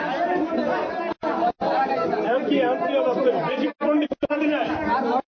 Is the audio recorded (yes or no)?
yes